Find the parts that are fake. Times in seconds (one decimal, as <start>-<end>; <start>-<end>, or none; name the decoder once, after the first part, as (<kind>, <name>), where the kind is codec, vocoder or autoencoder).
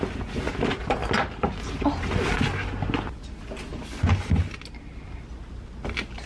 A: none